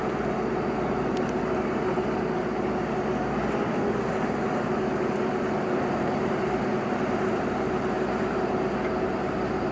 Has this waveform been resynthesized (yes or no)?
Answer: no